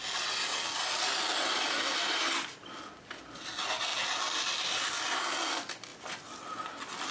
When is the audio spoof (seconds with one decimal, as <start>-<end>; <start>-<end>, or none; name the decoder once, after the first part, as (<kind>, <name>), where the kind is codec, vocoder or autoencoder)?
none